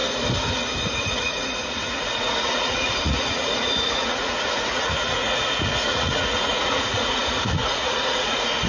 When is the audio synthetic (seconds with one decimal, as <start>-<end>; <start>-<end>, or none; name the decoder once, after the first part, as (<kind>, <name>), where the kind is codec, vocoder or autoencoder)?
0.8-8.7 (vocoder, Vocos)